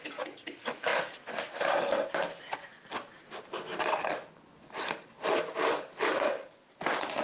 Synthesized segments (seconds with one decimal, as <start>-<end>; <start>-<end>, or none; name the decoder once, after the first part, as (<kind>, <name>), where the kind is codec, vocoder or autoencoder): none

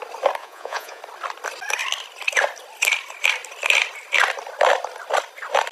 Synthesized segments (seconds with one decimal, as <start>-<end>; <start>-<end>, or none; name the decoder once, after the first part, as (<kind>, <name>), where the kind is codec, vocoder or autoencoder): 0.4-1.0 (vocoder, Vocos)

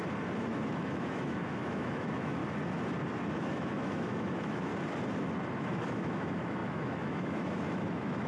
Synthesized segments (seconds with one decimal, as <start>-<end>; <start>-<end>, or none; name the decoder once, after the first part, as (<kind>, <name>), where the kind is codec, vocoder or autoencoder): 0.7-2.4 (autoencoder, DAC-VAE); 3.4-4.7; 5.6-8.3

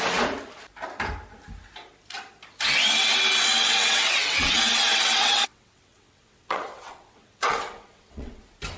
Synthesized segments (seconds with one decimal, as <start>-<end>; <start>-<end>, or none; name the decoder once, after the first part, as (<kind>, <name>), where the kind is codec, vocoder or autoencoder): 3.4-8.4 (vocoder, WaveNeXt)

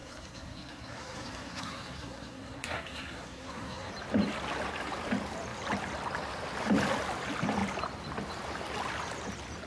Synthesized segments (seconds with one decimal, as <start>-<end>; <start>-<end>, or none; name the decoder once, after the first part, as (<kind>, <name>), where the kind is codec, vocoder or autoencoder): 0.0-3.9 (codec, SNAC)